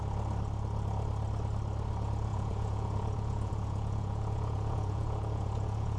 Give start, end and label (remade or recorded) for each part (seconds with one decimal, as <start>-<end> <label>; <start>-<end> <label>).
0.0-2.3 recorded; 2.3-6.0 remade